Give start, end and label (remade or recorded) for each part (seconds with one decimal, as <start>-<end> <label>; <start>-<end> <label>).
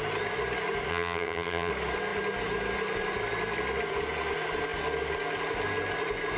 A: 0.0-0.9 recorded; 0.9-1.7 remade; 1.7-6.4 recorded